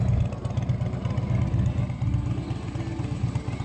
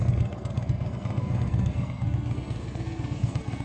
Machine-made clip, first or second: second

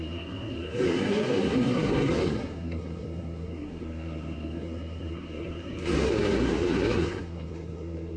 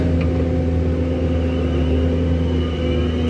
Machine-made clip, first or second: first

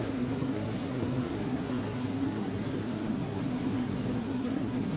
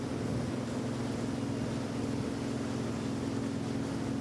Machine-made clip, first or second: first